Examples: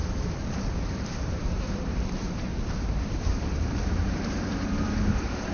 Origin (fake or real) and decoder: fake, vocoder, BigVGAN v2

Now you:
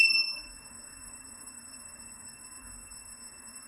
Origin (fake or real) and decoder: fake, codec, SNAC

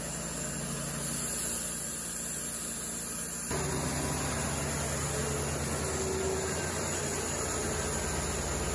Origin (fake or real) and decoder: real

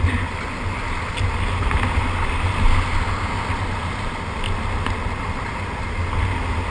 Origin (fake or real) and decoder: real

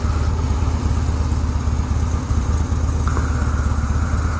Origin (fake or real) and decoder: real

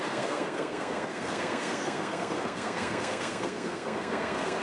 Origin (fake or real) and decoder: fake, codec, SNAC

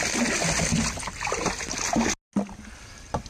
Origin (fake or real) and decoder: real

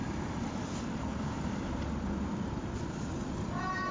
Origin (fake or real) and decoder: real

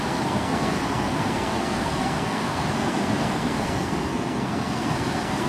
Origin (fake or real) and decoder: fake, codec, SNAC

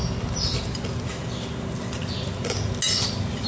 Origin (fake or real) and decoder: real